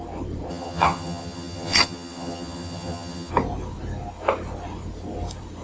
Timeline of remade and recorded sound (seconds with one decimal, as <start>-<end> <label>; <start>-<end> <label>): 0.0-0.5 recorded; 0.5-3.3 remade; 3.3-5.6 recorded

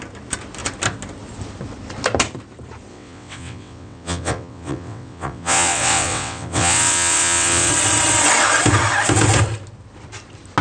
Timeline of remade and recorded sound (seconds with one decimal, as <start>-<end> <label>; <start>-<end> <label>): 0.0-2.9 recorded; 2.9-7.7 remade; 7.7-10.6 recorded

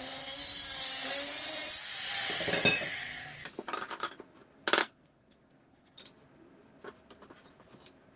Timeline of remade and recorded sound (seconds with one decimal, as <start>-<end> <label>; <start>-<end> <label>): 0.0-4.8 recorded; 4.8-6.0 remade; 6.0-8.2 recorded

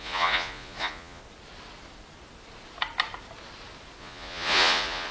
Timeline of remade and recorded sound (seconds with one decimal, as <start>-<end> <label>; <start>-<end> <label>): 0.0-1.2 remade; 1.2-4.0 recorded; 4.0-5.1 remade

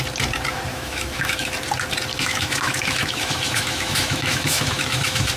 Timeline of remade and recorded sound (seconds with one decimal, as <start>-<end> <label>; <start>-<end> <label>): 0.0-0.7 recorded; 0.7-1.5 remade; 1.5-2.1 recorded; 2.1-5.4 remade

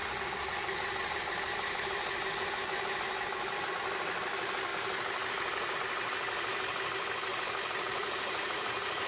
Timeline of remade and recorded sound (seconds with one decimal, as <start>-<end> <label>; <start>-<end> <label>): 0.0-7.9 recorded; 7.9-9.1 remade

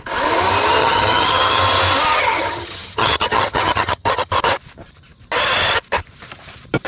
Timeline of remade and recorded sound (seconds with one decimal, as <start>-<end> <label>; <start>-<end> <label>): 0.0-0.8 recorded; 0.8-1.6 remade; 1.6-2.1 recorded; 2.1-4.3 remade; 4.3-6.9 recorded